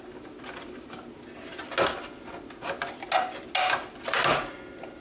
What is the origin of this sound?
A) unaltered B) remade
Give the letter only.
A